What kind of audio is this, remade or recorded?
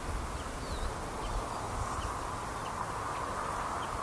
recorded